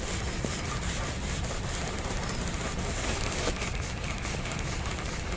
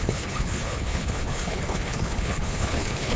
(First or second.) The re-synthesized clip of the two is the second